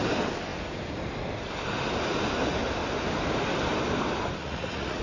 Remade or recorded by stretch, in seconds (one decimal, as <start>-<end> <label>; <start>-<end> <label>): 0.0-4.4 recorded; 4.4-5.0 remade